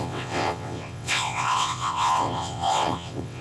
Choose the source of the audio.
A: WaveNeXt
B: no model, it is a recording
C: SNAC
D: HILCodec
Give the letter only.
A